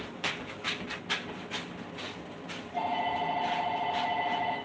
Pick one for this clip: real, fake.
real